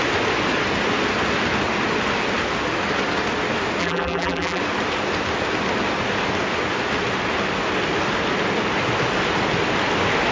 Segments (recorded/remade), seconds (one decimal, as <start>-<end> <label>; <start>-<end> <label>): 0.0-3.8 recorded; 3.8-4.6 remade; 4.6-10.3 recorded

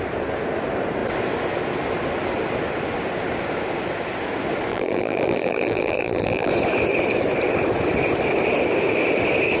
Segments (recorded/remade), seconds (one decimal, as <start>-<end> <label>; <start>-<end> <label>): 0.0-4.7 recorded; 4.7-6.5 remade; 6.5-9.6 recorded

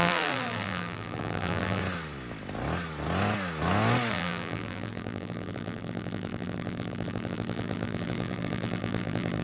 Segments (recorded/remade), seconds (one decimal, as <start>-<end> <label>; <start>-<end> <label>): 0.0-1.8 remade; 1.8-4.1 recorded; 4.1-9.4 remade

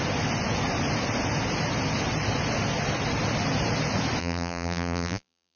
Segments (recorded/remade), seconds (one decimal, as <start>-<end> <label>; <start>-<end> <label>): 0.0-4.2 recorded; 4.2-5.6 remade